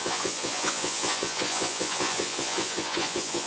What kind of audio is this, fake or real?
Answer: fake